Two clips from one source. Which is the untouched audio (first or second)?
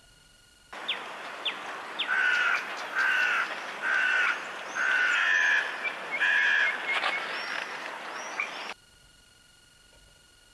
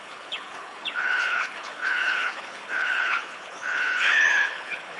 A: first